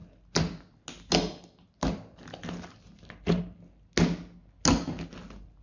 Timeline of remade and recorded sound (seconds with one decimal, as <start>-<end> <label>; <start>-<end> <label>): 0.0-5.6 recorded

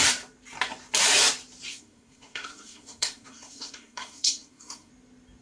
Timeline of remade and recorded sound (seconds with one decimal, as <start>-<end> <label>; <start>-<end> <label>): 0.0-1.7 recorded; 1.7-4.9 remade; 4.9-5.4 recorded

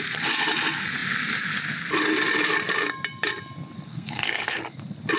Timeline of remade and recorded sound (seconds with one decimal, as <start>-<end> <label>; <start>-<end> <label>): 0.0-3.9 recorded; 3.9-4.6 remade; 4.6-5.2 recorded

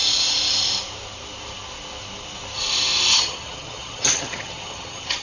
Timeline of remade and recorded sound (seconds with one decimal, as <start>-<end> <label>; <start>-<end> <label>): 0.0-3.1 recorded; 3.1-5.2 remade

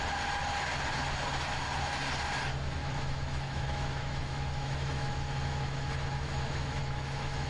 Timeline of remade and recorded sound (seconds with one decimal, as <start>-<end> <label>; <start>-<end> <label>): 0.0-2.8 recorded; 2.8-7.5 remade

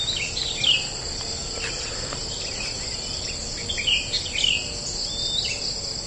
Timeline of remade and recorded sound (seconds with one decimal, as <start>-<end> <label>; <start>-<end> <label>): 0.0-6.1 recorded

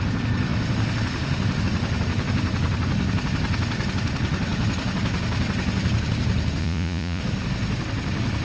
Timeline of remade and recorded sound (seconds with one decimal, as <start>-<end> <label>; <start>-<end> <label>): 0.0-6.6 recorded; 6.6-7.2 remade; 7.2-8.4 recorded